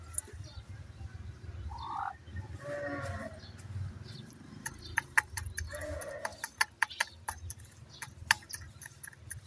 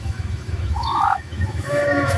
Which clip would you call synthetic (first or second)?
second